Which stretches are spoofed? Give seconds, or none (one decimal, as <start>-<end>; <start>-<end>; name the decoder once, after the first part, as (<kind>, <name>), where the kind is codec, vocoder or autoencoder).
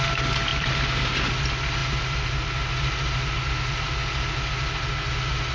0.5-1.1 (vocoder, BigVGAN v2)